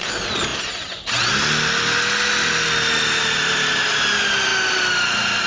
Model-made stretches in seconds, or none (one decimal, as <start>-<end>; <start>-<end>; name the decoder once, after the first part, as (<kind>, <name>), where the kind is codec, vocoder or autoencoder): none